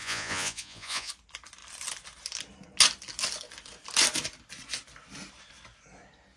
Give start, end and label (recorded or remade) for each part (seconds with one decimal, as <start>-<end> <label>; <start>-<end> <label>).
0.0-1.1 remade; 1.1-6.4 recorded